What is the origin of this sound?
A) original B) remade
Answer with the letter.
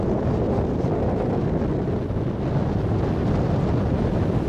A